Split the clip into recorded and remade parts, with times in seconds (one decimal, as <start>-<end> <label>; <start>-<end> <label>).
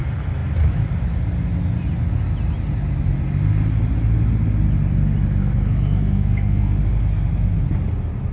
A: 0.0-5.4 recorded; 5.4-6.8 remade; 6.8-8.3 recorded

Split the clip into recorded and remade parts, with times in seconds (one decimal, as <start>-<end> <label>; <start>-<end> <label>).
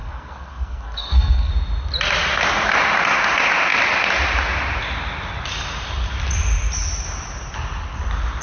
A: 0.0-1.5 remade; 1.5-8.4 recorded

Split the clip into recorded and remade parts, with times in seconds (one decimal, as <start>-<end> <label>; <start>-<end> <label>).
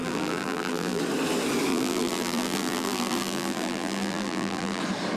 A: 0.0-1.0 remade; 1.0-1.7 recorded; 1.7-4.8 remade; 4.8-5.2 recorded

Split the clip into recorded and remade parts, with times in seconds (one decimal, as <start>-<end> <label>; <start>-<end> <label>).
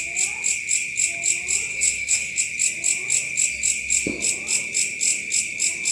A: 0.0-1.7 recorded; 1.7-2.4 remade; 2.4-5.9 recorded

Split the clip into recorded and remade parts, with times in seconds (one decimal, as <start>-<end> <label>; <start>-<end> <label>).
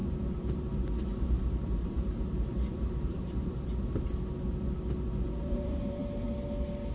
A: 0.0-3.5 remade; 3.5-5.4 recorded; 5.4-6.0 remade; 6.0-6.9 recorded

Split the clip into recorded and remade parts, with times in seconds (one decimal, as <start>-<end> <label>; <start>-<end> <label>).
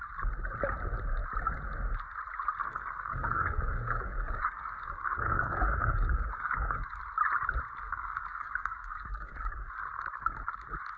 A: 0.0-2.6 recorded; 2.6-7.0 remade; 7.0-7.9 recorded; 7.9-9.7 remade; 9.7-11.0 recorded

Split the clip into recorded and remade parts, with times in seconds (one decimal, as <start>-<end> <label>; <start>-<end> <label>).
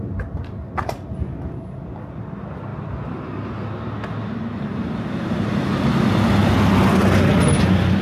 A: 0.0-8.0 recorded